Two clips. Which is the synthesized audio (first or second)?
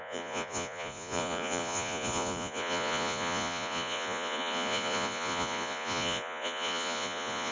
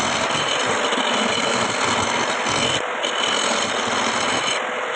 first